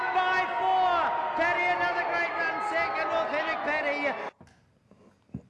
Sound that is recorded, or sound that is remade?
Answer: recorded